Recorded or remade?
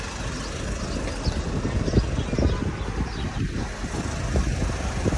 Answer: recorded